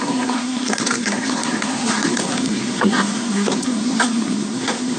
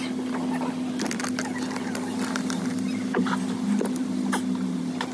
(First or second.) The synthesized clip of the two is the first